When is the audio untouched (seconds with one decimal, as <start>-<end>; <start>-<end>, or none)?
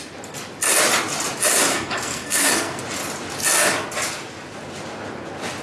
0.0-1.7; 2.8-5.6